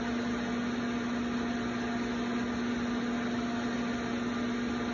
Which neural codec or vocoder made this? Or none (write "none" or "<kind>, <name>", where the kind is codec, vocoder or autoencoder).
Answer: none